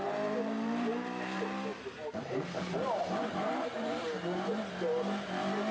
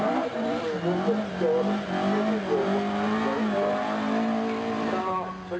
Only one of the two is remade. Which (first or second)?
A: first